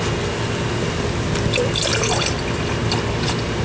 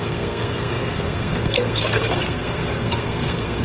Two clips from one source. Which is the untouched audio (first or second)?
first